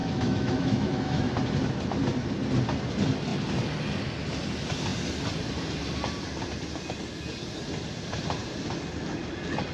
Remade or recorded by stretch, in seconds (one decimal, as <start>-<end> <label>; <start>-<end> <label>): 0.0-1.3 remade; 1.3-9.7 recorded